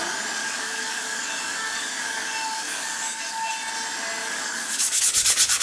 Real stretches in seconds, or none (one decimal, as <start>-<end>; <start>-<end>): 0.0-0.4; 3.5-4.2; 5.0-5.6